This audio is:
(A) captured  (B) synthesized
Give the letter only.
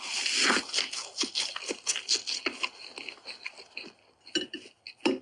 A